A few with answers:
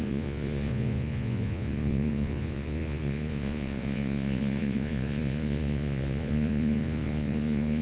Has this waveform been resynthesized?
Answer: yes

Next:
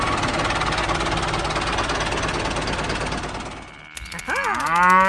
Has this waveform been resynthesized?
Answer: no